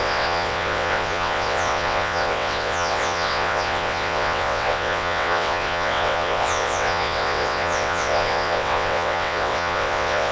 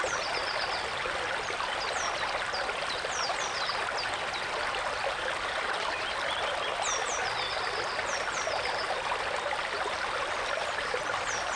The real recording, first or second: second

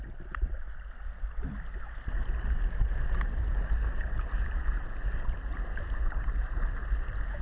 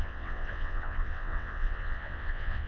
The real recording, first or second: first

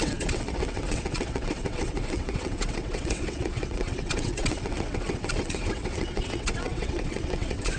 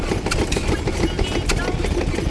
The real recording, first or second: second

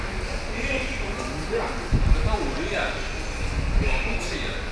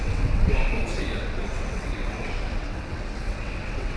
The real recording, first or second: first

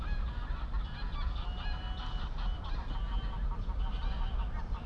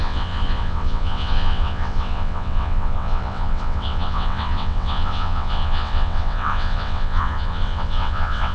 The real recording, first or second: first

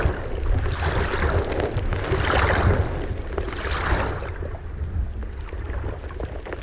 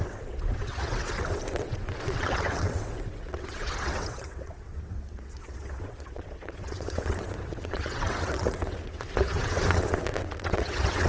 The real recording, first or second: first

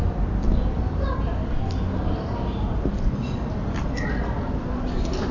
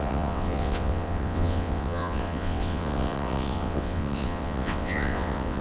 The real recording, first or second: first